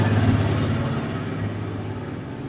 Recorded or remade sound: recorded